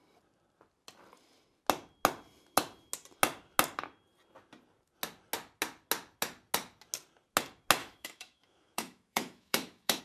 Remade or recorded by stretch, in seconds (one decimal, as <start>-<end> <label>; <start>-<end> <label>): 0.0-7.8 recorded; 7.8-10.0 remade